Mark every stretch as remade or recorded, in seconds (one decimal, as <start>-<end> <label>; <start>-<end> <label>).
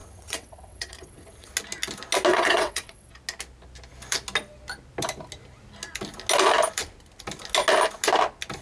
0.0-1.5 remade; 1.5-2.3 recorded; 2.3-3.1 remade; 3.1-8.6 recorded